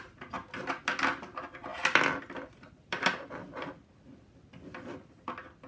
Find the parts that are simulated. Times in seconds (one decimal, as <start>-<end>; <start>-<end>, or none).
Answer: none